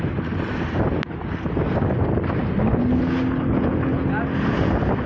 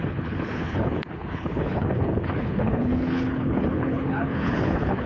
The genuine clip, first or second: first